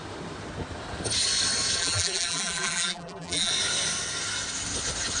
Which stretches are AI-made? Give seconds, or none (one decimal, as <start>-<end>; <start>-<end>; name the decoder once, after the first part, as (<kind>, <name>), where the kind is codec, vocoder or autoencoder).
1.8-3.5 (vocoder, BigVGAN v2)